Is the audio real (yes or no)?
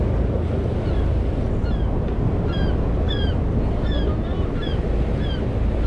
yes